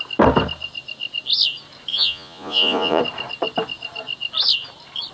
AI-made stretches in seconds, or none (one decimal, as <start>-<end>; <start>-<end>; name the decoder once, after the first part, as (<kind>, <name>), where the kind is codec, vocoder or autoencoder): 1.9-3.0 (vocoder, Vocos)